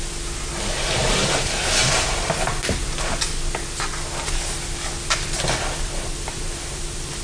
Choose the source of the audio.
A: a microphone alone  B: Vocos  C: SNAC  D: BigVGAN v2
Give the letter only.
A